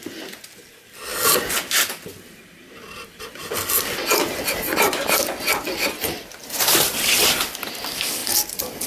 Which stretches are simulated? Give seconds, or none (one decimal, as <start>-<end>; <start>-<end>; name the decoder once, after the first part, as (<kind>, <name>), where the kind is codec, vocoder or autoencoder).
6.4-7.2 (vocoder, BigVGAN v2)